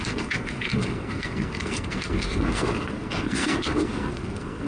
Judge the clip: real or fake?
fake